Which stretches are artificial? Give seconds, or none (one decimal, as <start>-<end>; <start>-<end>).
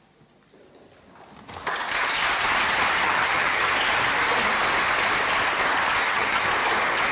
3.0-3.7; 6.0-6.5